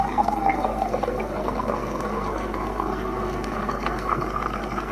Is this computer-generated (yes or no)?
yes